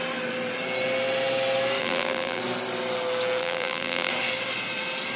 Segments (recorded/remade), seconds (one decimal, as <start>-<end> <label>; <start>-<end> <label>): 0.0-1.8 recorded; 1.8-2.4 remade; 2.4-3.4 recorded; 3.4-4.1 remade; 4.1-5.2 recorded